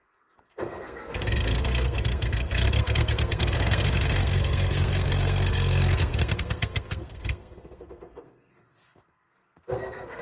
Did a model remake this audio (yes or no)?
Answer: yes